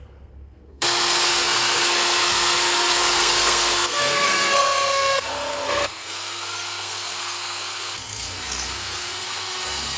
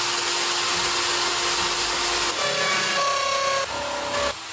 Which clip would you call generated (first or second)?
first